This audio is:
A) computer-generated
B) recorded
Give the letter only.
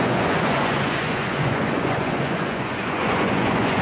A